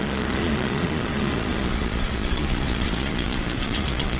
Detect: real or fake fake